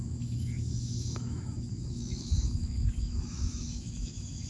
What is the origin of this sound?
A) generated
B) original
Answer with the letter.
A